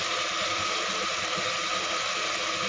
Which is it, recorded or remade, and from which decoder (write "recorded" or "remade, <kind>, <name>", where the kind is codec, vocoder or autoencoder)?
recorded